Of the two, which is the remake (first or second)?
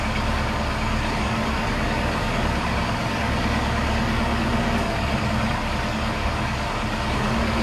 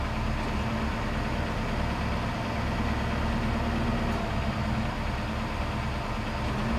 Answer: first